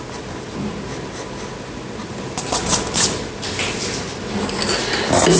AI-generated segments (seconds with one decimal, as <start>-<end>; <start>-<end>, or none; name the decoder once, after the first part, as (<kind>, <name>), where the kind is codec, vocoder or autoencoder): none